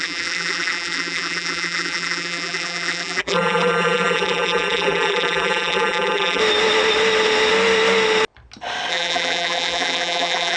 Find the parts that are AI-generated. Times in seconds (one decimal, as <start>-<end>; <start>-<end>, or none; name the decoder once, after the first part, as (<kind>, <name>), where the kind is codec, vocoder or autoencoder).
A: 0.0-6.4 (vocoder, BigVGAN v2); 8.9-10.6